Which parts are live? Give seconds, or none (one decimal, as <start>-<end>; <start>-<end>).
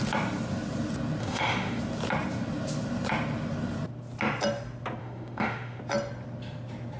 0.0-1.2; 1.8-5.0; 5.8-7.0